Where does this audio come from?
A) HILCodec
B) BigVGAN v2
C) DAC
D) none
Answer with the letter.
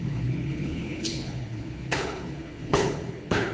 A